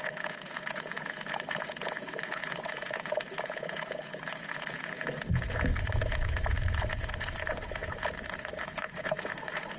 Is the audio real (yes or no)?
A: no